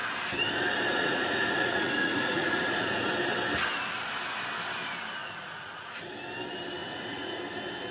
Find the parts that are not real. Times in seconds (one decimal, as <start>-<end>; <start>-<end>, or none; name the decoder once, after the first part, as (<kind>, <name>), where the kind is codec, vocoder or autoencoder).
0.9-3.1 (vocoder, Vocos); 5.2-6.1; 6.8-7.4